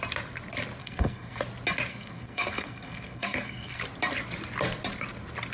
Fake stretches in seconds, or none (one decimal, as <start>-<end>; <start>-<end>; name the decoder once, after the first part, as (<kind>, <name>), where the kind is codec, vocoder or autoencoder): 0.8-1.4 (codec, SNAC); 1.9-3.8